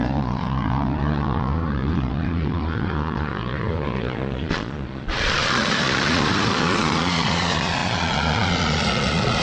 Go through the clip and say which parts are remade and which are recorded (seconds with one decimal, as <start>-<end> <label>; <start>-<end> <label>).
0.0-9.4 remade